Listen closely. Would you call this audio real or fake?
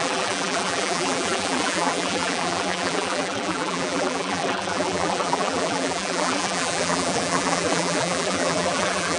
fake